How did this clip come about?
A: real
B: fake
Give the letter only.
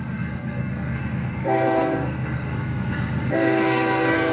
B